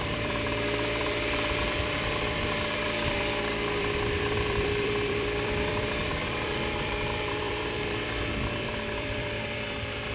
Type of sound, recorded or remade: remade